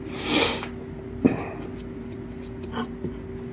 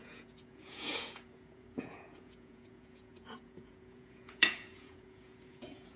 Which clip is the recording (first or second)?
first